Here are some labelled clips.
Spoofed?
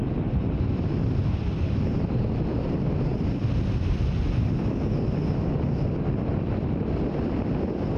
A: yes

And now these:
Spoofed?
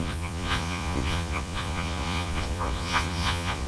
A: yes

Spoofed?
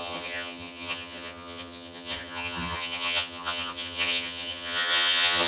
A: yes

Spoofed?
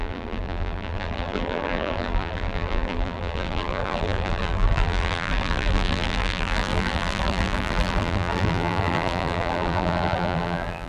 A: yes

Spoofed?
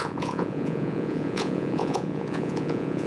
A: yes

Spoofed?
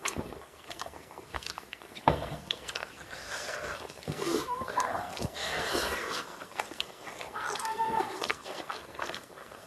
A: yes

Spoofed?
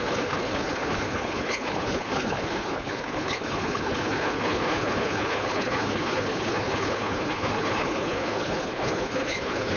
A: yes